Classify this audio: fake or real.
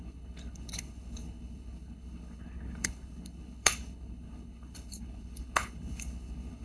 fake